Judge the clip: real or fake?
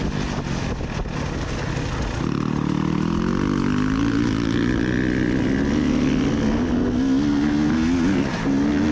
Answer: real